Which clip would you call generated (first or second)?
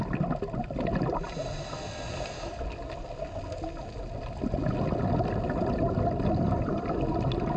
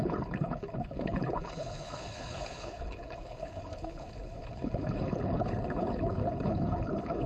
second